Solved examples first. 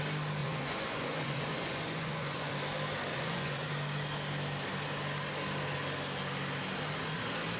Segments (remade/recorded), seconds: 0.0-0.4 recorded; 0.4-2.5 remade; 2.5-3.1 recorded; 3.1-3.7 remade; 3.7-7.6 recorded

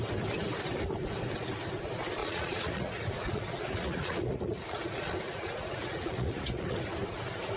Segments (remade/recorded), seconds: 0.0-2.2 recorded; 2.2-6.8 remade; 6.8-7.6 recorded

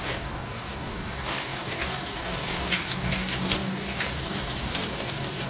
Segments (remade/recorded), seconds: 0.0-5.5 remade